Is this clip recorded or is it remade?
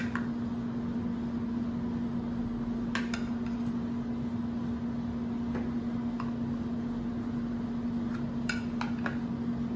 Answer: recorded